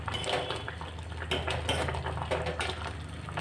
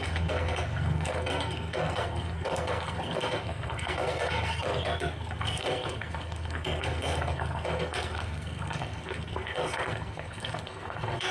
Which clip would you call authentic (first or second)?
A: first